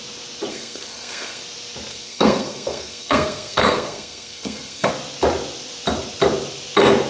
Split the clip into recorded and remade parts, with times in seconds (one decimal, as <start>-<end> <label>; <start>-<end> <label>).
0.0-0.5 recorded; 0.5-1.4 remade; 1.4-1.9 recorded; 1.9-4.9 remade; 4.9-7.1 recorded